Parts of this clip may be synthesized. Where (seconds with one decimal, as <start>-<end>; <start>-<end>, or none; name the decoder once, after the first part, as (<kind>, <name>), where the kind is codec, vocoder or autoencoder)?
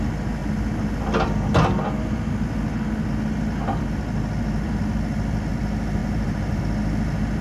6.0-6.6 (vocoder, BigVGAN v2)